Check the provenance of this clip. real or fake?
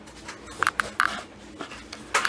real